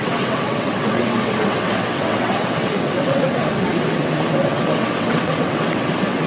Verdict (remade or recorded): remade